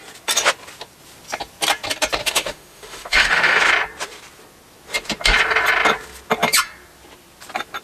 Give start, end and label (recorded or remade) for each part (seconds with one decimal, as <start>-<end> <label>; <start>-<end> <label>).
0.0-2.2 recorded; 2.2-3.6 remade; 3.6-7.8 recorded